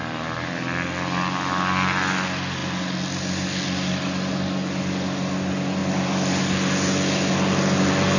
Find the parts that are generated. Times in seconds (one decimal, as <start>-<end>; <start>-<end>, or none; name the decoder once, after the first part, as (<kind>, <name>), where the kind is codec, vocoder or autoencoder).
0.0-0.5 (vocoder, BigVGAN v2); 5.8-6.4